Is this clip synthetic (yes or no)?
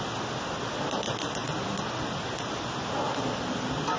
no